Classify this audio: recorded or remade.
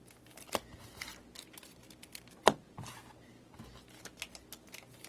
recorded